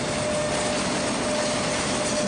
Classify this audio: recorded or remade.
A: recorded